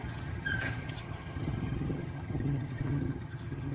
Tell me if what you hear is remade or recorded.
remade